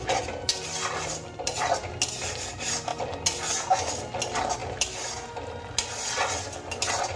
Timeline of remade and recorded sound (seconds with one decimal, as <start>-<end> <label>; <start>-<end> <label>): 0.0-7.2 recorded